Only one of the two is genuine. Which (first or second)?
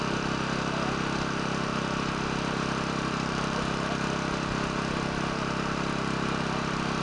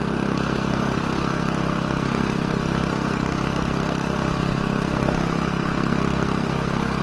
first